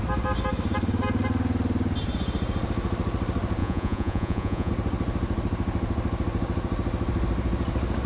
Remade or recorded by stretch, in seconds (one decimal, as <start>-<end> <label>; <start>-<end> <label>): 0.0-3.6 recorded; 3.6-4.7 remade; 4.7-8.1 recorded